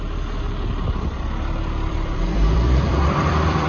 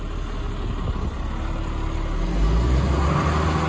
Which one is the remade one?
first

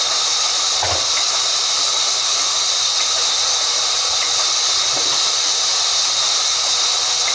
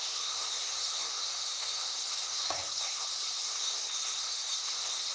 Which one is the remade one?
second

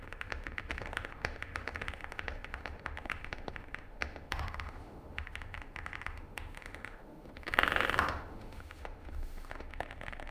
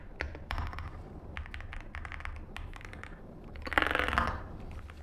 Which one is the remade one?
first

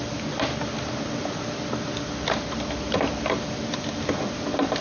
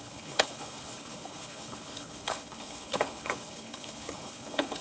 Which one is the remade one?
second